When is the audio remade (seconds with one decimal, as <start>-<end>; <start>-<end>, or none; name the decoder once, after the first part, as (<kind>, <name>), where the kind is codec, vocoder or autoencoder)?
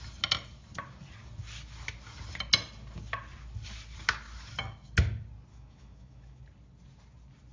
5.5-6.4 (autoencoder, DAC-VAE)